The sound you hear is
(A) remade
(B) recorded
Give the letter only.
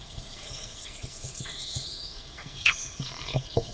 A